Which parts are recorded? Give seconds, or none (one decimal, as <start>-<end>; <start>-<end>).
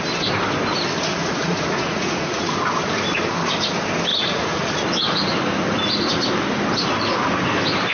0.0-1.2; 2.4-4.1; 4.7-7.9